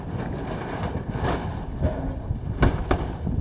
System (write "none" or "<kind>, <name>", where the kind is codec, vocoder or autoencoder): none